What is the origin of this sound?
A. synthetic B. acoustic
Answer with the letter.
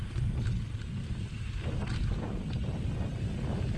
B